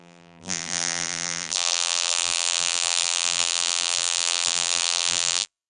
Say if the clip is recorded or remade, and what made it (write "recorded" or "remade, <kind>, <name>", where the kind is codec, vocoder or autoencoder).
remade, vocoder, BigVGAN v2